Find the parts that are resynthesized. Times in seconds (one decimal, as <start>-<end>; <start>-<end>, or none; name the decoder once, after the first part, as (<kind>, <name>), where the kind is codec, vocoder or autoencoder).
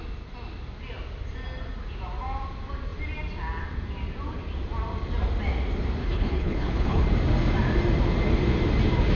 6.0-7.0 (codec, HILCodec)